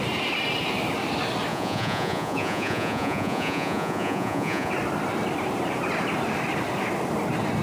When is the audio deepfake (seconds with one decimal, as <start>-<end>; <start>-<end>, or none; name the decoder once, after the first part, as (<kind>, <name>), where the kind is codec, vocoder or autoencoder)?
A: 1.5-4.7 (vocoder, Vocos)